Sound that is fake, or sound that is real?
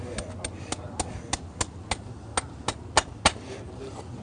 real